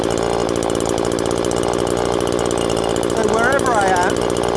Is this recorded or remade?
recorded